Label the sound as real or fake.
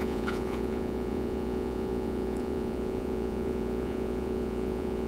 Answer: fake